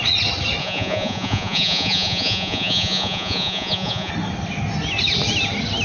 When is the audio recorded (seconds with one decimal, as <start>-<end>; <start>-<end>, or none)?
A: 0.0-0.6; 4.1-5.8